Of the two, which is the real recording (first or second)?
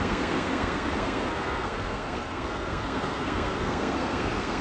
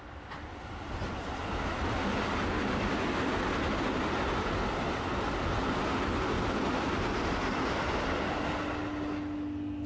second